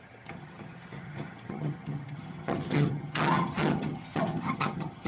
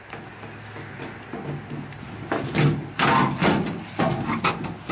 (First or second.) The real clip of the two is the second